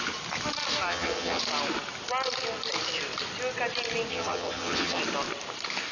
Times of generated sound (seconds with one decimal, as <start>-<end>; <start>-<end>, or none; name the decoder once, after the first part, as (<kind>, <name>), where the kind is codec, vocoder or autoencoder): 0.9-1.4 (vocoder, HiFi-GAN); 4.1-5.0